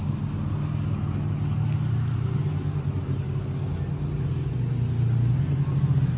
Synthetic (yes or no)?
no